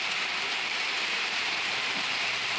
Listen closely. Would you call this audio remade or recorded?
remade